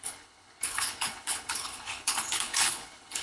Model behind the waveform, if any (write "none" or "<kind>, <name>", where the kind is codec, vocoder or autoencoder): codec, HILCodec